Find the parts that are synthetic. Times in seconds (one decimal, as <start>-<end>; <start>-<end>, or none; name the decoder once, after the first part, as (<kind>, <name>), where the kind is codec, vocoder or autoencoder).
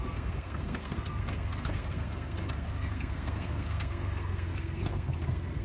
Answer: 0.0-5.6 (codec, SNAC)